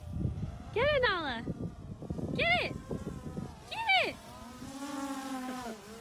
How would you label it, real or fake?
real